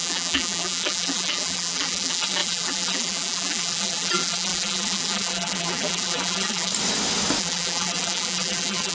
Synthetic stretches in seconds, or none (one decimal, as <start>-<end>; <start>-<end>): 0.0-6.7; 7.4-8.9